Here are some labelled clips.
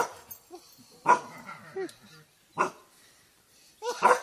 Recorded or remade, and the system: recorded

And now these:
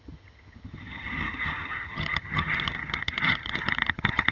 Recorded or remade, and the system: remade, vocoder, HiFi-GAN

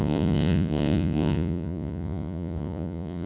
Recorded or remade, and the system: remade, vocoder, Vocos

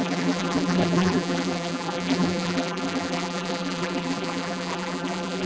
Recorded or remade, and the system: remade, vocoder, BigVGAN v2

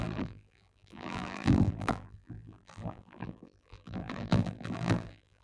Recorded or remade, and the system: remade, vocoder, BigVGAN v2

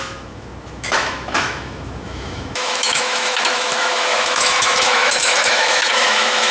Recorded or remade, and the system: remade, autoencoder, DAC-VAE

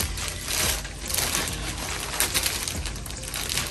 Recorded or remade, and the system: recorded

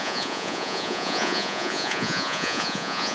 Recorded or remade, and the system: remade, vocoder, Vocos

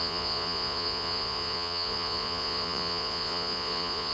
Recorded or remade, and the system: remade, vocoder, Vocos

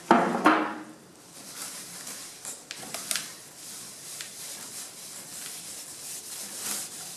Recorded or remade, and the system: recorded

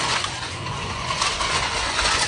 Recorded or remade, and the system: remade, vocoder, Vocos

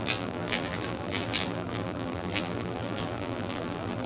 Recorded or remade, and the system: remade, vocoder, BigVGAN v2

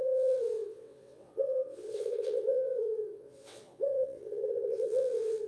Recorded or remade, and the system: remade, vocoder, WaveNeXt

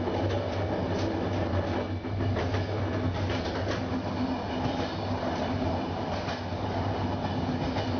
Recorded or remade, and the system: recorded